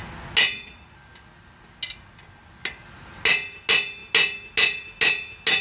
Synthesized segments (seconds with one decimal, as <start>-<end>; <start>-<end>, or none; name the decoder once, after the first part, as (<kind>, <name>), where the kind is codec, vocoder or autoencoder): none